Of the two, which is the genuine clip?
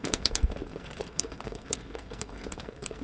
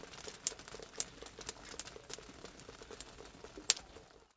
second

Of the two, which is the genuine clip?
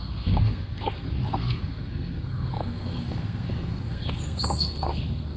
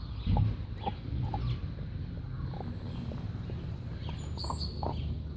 second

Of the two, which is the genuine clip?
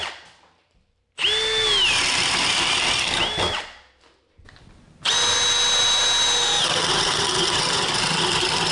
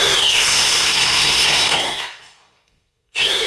first